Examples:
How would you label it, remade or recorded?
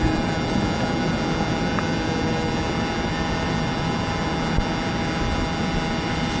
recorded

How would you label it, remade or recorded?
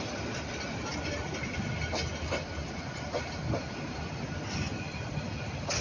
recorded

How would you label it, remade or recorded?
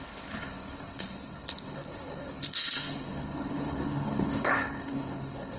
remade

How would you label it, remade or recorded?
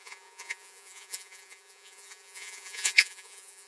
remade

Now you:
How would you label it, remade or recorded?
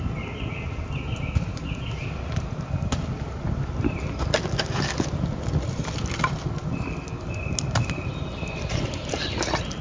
recorded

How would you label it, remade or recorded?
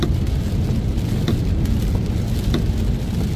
recorded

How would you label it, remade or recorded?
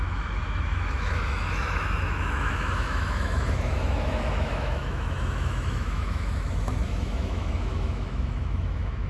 remade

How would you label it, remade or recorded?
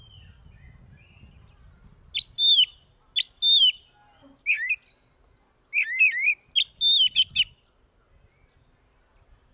recorded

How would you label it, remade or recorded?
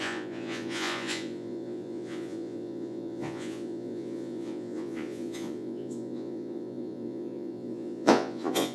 remade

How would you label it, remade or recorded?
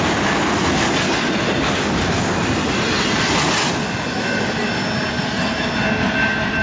recorded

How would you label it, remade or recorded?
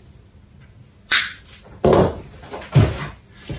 recorded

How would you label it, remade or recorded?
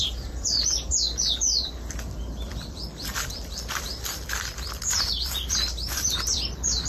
remade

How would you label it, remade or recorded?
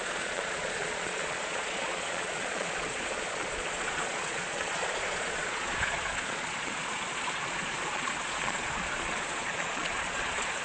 remade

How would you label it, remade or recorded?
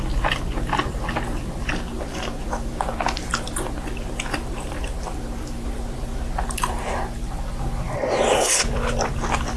recorded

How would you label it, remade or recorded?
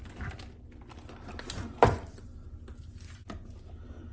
recorded